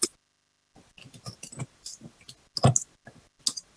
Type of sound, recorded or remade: recorded